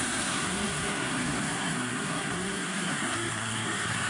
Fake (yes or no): yes